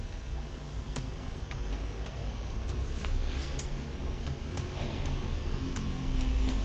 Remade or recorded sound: remade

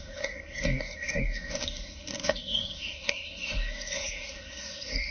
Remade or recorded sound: remade